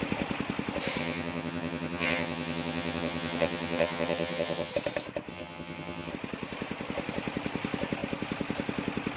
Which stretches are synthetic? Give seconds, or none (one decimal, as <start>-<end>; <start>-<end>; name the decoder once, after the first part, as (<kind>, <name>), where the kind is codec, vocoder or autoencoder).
1.0-4.7 (vocoder, HiFi-GAN); 5.3-6.1